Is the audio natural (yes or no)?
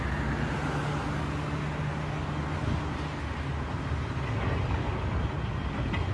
yes